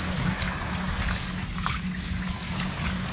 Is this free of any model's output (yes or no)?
no